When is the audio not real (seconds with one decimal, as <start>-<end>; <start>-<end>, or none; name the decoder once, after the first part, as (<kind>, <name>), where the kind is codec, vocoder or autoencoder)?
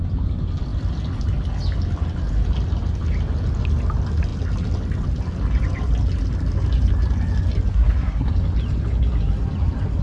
7.7-8.3 (codec, SNAC)